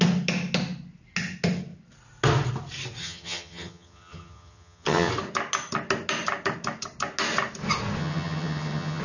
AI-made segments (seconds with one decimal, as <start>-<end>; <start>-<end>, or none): 3.0-5.1; 8.0-9.0